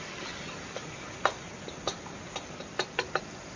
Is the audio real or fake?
real